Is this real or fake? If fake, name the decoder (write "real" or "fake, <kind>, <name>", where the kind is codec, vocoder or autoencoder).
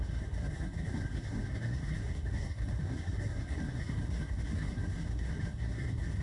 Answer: fake, codec, SNAC